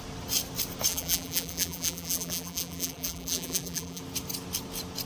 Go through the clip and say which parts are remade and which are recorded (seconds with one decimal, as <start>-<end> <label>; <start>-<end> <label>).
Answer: 0.0-0.9 recorded; 0.9-4.0 remade; 4.0-5.1 recorded